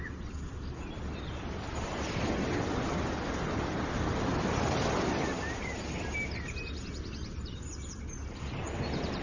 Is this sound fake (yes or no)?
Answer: no